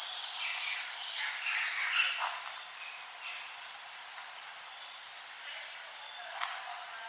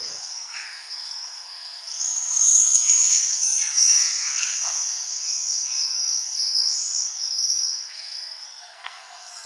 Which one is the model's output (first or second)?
second